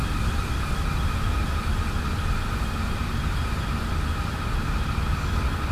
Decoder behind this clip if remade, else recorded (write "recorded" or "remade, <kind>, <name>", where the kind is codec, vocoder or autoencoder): recorded